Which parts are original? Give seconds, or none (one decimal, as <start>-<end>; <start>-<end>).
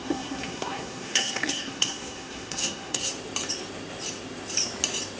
3.1-5.2